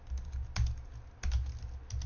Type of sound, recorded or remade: recorded